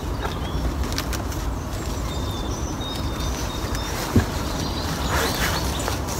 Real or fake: real